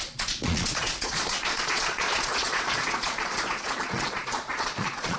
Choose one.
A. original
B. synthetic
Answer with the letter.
B